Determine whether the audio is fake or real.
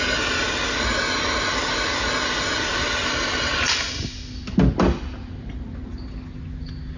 real